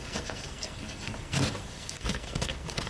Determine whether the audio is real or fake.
fake